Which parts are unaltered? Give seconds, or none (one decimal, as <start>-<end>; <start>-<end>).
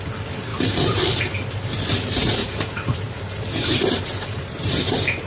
0.0-0.5; 1.2-2.4